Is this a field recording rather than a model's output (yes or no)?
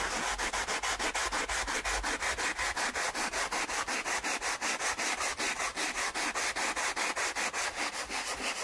yes